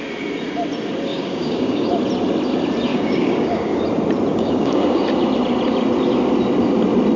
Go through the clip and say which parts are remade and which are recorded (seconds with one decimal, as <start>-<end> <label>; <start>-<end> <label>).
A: 0.0-1.1 recorded; 1.1-1.9 remade; 1.9-2.9 recorded; 2.9-3.8 remade; 3.8-4.3 recorded; 4.3-5.0 remade; 5.0-7.2 recorded